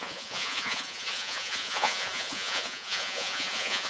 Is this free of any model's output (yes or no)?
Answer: no